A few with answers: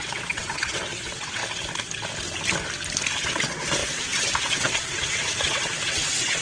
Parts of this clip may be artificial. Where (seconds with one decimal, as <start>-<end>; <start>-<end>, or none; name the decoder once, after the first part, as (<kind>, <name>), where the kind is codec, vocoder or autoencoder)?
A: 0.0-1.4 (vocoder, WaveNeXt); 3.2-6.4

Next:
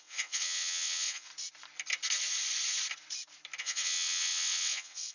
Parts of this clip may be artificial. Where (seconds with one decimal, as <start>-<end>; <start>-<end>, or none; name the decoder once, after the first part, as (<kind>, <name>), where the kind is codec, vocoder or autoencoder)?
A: 0.0-1.3 (vocoder, WaveNeXt); 3.6-5.1

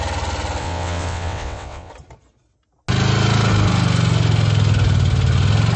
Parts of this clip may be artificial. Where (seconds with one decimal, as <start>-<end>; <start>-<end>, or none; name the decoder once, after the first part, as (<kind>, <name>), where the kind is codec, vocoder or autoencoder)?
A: 0.6-1.9 (vocoder, WaveNeXt)

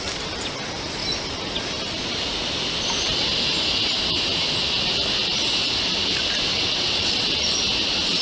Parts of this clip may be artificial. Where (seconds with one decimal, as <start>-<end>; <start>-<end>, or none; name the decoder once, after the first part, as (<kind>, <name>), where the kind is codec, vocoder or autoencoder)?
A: 6.5-7.3 (vocoder, WaveNeXt)